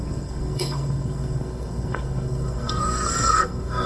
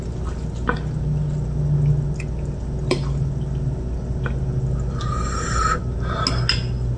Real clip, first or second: second